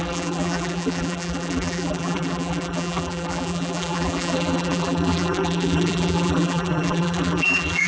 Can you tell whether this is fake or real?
fake